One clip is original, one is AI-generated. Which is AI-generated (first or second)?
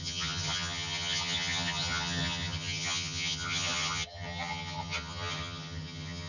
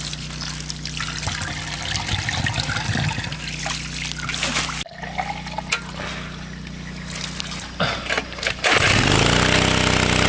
first